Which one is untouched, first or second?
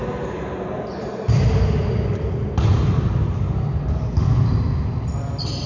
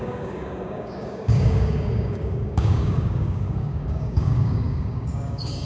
first